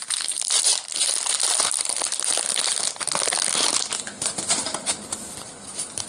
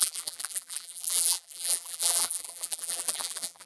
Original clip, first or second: first